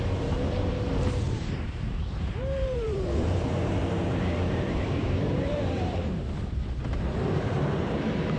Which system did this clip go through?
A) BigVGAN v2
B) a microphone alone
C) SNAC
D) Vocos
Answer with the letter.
A